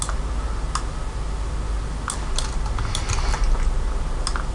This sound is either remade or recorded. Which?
recorded